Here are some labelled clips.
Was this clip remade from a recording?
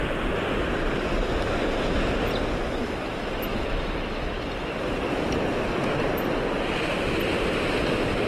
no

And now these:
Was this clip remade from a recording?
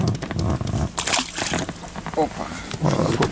no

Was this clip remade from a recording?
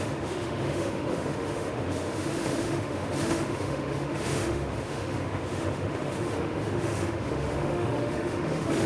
yes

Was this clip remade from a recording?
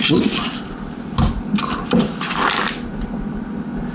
no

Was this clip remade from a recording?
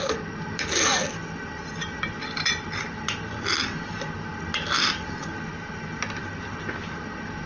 no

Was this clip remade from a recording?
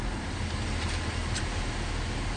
no